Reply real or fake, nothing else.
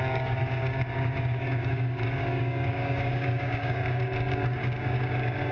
fake